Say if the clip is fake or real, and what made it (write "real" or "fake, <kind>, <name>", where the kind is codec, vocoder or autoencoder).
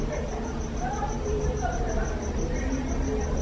real